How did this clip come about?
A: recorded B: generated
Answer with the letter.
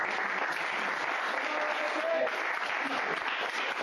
A